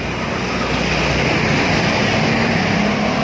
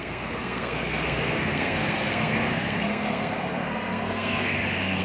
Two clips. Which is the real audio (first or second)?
first